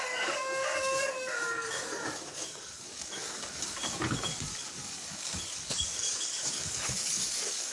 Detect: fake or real fake